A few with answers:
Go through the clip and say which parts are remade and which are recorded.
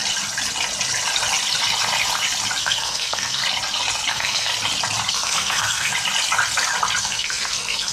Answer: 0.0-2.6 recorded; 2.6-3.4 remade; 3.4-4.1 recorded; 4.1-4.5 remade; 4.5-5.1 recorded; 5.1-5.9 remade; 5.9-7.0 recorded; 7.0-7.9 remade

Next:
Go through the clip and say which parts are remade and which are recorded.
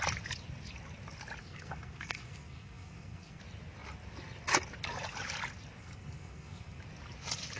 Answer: 0.0-1.4 recorded; 1.4-3.4 remade; 3.4-5.8 recorded; 5.8-6.8 remade; 6.8-7.6 recorded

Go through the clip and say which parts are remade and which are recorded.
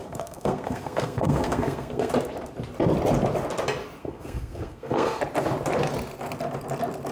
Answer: 0.0-2.1 remade; 2.1-4.0 recorded; 4.0-5.2 remade; 5.2-7.1 recorded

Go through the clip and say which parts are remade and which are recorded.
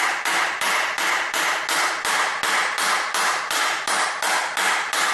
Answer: 0.0-5.1 recorded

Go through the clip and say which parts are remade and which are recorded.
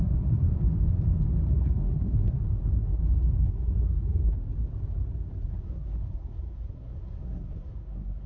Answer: 0.0-0.5 remade; 0.5-1.5 recorded; 1.5-3.0 remade; 3.0-3.5 recorded; 3.5-4.3 remade; 4.3-5.5 recorded; 5.5-8.3 remade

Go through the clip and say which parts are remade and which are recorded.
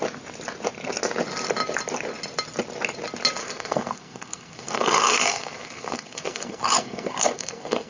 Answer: 0.0-3.4 recorded; 3.4-7.9 remade